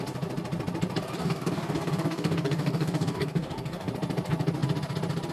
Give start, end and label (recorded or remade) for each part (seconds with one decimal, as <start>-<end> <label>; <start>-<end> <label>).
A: 0.0-1.2 recorded; 1.2-3.9 remade; 3.9-5.3 recorded